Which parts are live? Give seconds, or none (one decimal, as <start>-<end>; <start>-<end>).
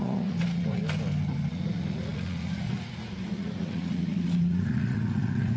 0.8-1.5